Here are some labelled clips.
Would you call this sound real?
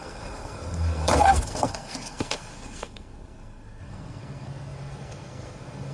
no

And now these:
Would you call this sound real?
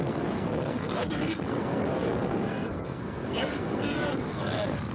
no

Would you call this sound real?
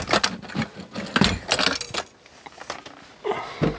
yes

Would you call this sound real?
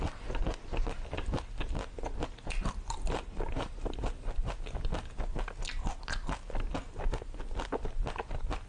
yes